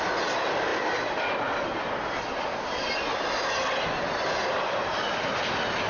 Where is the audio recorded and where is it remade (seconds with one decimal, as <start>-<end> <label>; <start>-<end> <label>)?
0.0-5.9 recorded